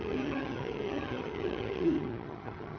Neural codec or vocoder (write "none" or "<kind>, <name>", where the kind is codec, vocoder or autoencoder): vocoder, HiFi-GAN